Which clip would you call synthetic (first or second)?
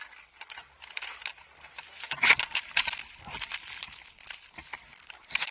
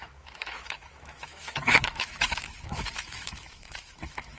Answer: second